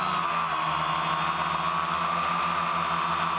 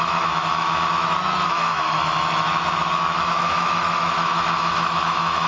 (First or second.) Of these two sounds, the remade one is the second